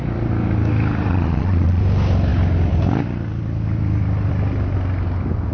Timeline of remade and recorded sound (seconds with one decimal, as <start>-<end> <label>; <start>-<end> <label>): 0.0-1.1 recorded; 1.1-1.8 remade; 1.8-5.5 recorded

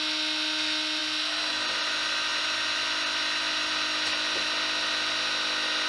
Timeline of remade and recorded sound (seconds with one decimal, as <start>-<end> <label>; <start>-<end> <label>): 0.0-5.9 recorded

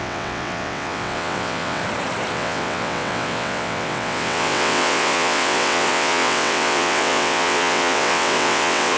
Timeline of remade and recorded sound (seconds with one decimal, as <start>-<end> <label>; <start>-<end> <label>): 0.0-1.8 remade; 1.8-2.3 recorded; 2.3-9.0 remade

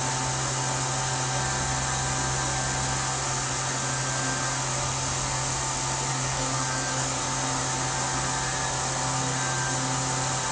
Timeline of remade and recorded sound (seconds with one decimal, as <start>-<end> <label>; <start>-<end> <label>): 0.0-6.1 recorded; 6.1-7.2 remade; 7.2-10.5 recorded

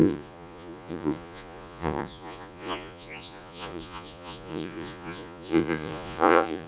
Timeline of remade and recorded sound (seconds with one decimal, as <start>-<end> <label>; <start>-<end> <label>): 0.0-6.7 remade

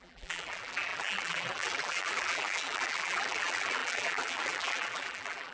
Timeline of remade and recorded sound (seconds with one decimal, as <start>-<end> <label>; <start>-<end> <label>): 0.0-5.5 remade

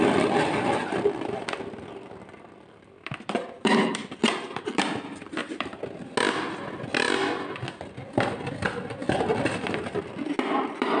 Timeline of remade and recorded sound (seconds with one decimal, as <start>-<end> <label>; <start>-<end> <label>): 0.0-5.7 remade; 5.7-8.6 recorded; 8.6-9.0 remade; 9.0-9.6 recorded; 9.6-11.0 remade

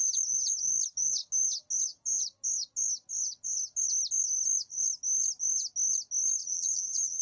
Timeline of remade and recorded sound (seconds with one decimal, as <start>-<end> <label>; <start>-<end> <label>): 0.0-6.4 recorded; 6.4-7.2 remade